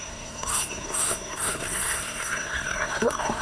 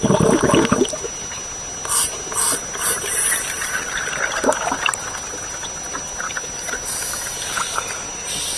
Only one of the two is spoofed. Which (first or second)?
first